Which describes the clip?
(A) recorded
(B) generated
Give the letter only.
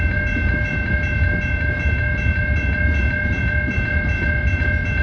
A